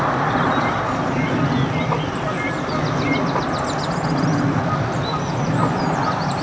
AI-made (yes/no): no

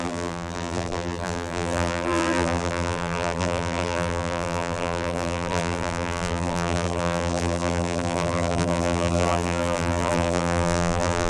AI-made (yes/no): yes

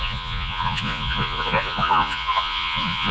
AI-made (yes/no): yes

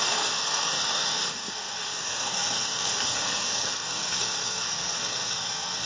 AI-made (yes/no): yes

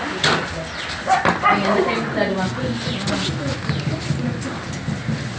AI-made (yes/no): no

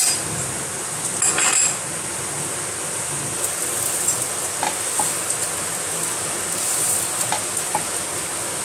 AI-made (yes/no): no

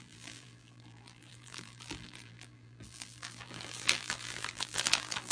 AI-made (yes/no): yes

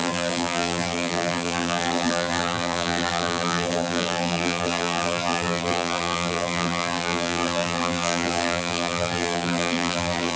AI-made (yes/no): yes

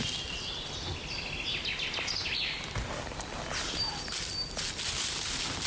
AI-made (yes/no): no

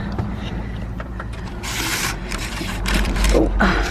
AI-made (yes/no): yes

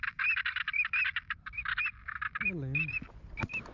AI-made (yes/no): no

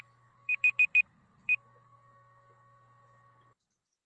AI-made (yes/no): yes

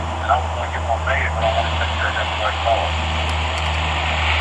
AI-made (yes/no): no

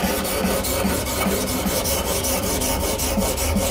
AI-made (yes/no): no